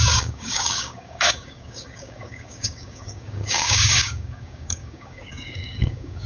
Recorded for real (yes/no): no